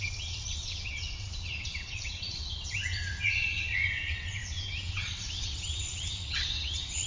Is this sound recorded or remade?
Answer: remade